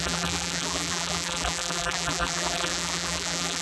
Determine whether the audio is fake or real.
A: fake